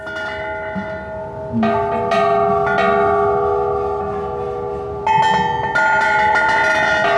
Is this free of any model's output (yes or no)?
yes